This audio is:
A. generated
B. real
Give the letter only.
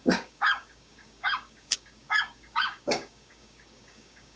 A